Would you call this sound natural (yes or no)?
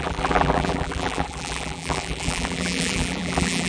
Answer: no